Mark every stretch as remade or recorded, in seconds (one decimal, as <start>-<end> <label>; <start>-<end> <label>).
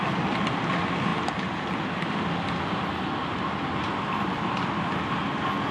0.0-5.7 recorded